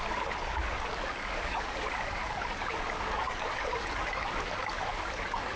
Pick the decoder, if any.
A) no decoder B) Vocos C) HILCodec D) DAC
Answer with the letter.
D